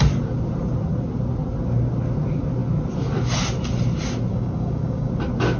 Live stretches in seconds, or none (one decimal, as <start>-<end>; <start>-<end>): 0.0-4.3; 5.1-5.6